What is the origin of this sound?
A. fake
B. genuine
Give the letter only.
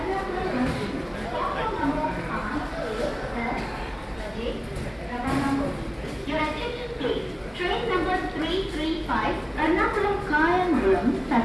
B